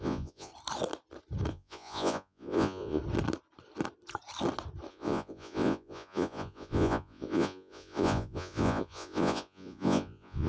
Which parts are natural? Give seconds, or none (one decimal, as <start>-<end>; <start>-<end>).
0.5-1.5; 3.0-4.9